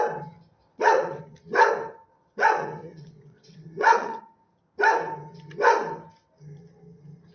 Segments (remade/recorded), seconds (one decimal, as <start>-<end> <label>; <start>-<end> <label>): 0.0-0.6 recorded; 0.6-1.2 remade; 1.2-2.1 recorded; 2.1-4.2 remade; 4.2-7.3 recorded